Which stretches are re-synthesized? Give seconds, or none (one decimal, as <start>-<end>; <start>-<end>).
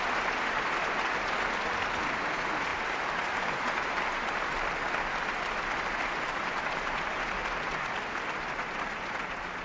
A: none